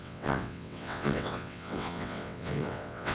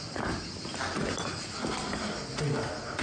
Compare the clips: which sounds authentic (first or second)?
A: second